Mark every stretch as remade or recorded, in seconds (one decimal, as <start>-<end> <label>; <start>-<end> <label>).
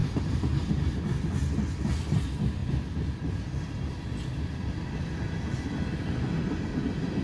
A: 0.0-0.7 remade; 0.7-7.2 recorded